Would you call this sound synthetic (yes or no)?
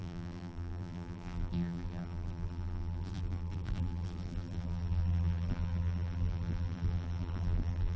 yes